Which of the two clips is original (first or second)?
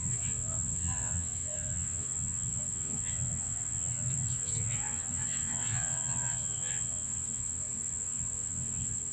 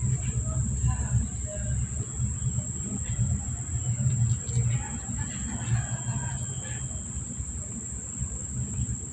second